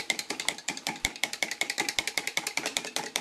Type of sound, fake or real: fake